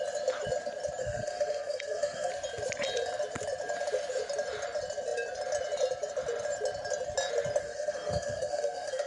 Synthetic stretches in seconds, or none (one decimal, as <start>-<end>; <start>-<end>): 1.0-2.3; 7.6-9.1